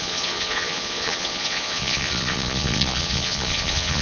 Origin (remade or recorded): remade